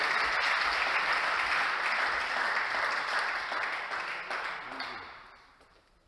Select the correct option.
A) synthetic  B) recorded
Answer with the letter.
B